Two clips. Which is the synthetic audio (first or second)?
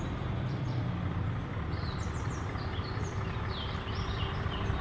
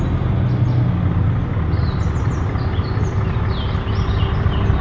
first